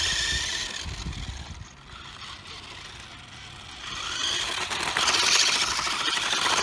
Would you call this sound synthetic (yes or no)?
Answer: no